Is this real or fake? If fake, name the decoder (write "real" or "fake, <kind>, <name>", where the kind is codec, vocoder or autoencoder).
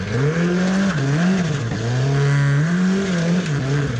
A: real